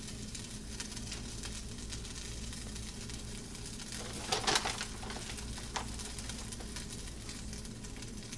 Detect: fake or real real